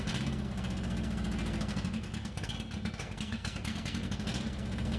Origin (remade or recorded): remade